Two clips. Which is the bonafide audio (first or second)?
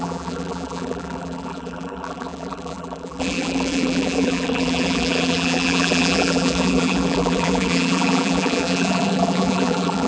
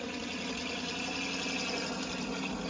second